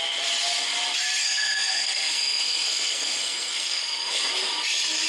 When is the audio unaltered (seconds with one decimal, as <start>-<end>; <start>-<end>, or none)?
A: 0.0-1.2; 4.3-5.1